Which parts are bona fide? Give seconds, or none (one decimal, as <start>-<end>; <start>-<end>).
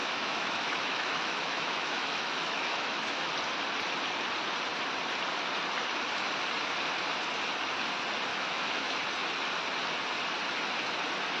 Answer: 3.3-8.3; 9.0-11.4